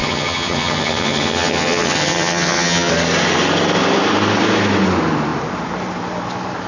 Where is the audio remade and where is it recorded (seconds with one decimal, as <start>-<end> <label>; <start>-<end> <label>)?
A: 0.0-2.9 remade; 2.9-6.7 recorded

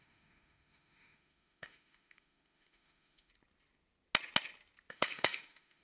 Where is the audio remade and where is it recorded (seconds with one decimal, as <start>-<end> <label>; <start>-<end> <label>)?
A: 0.0-3.3 remade; 3.3-4.9 recorded; 4.9-5.8 remade

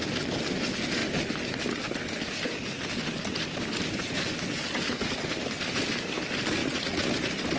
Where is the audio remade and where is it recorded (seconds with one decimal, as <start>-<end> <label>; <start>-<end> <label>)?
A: 0.0-6.6 recorded; 6.6-7.1 remade; 7.1-7.6 recorded

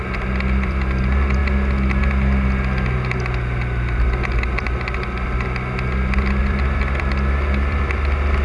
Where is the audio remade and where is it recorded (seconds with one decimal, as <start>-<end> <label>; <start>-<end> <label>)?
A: 0.0-1.4 remade; 1.4-6.4 recorded; 6.4-8.4 remade

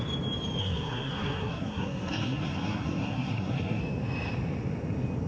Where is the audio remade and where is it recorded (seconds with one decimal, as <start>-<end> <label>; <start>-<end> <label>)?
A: 0.0-0.6 recorded; 0.6-3.8 remade; 3.8-5.3 recorded

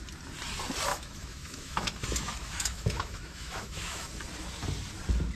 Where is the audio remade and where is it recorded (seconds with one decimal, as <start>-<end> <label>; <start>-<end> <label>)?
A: 0.0-0.9 recorded; 0.9-4.1 remade; 4.1-5.4 recorded